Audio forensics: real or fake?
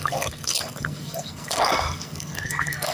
fake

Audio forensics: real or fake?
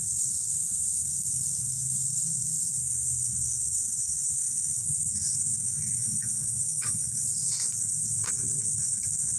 fake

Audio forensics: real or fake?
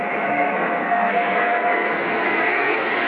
fake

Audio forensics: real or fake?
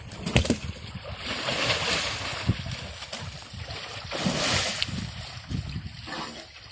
real